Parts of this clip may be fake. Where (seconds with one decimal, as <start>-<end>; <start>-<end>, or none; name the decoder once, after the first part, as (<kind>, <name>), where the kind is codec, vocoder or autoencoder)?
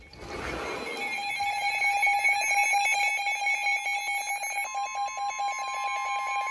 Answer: none